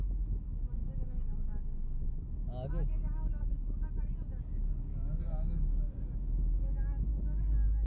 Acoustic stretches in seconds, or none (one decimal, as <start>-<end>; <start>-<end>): 0.0-7.9